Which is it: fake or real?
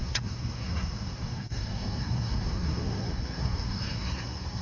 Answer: fake